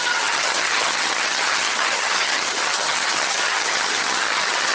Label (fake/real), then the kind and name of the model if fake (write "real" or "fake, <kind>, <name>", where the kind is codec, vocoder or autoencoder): fake, vocoder, HiFi-GAN